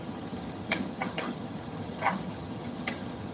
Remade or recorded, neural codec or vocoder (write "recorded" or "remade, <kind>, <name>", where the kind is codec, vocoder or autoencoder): remade, vocoder, HiFi-GAN